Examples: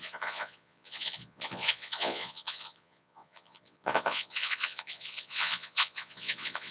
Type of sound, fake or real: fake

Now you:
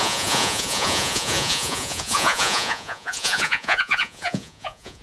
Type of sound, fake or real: fake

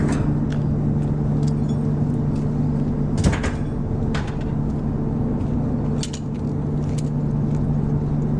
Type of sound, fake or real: real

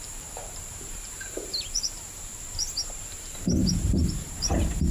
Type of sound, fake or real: fake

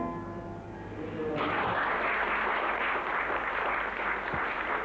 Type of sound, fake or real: real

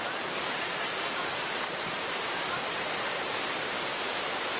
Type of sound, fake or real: fake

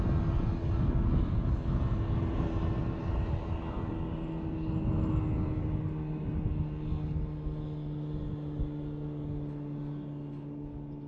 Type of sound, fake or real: real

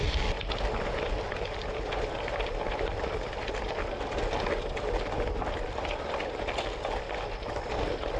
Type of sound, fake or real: real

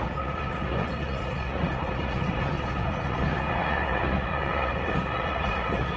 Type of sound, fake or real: fake